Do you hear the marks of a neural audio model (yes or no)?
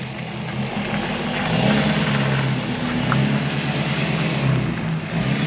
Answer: no